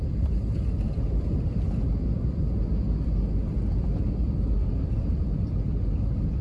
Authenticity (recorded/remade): remade